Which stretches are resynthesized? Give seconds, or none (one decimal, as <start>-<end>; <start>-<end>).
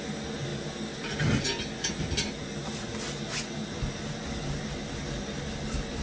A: none